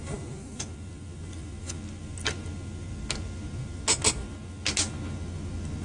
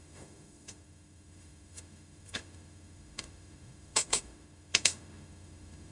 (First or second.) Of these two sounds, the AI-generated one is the second